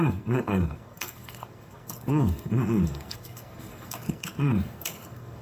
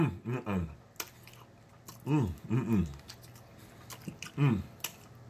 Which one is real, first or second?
second